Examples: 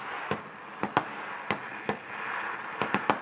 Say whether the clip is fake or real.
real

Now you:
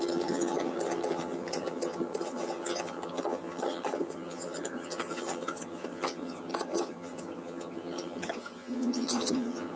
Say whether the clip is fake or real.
fake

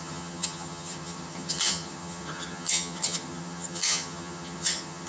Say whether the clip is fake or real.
fake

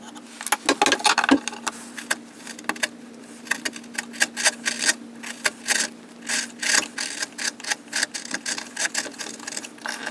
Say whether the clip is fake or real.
real